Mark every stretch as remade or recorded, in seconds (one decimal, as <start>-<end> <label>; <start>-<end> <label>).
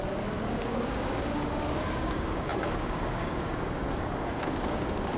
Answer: 0.0-5.2 remade